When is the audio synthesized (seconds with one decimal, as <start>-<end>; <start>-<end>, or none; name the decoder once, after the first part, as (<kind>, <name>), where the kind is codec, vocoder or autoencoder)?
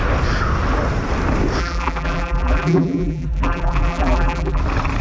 1.6-4.6 (vocoder, BigVGAN v2)